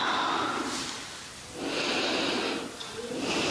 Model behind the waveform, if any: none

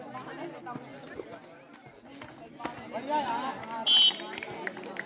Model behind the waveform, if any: none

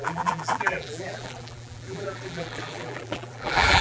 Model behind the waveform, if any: vocoder, BigVGAN v2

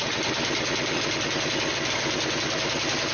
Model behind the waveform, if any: none